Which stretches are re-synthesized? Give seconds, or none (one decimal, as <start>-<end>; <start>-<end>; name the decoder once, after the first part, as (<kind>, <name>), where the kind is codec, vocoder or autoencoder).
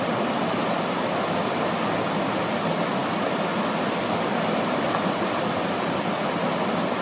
none